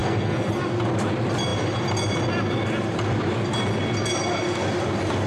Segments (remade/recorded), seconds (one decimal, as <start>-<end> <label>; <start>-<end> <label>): 0.0-0.5 remade; 0.5-5.3 recorded